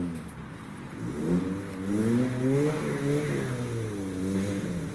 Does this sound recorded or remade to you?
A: recorded